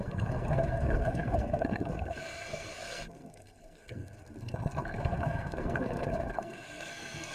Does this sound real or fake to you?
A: fake